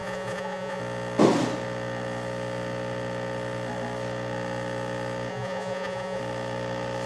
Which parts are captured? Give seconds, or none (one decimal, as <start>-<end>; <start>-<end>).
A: 0.8-5.3; 6.2-7.1